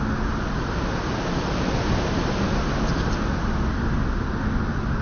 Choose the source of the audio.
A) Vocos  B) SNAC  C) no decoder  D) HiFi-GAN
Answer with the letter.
C